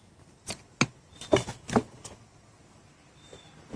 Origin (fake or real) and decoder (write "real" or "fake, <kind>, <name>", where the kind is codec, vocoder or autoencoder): real